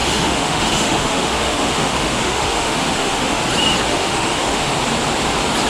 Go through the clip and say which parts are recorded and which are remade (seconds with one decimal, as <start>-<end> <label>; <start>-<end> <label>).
0.0-3.4 remade; 3.4-3.9 recorded; 3.9-4.7 remade; 4.7-5.7 recorded